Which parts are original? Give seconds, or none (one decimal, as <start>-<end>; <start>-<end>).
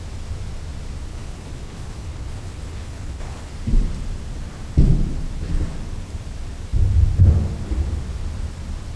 0.0-1.1; 3.5-9.0